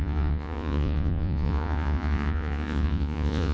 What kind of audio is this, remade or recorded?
remade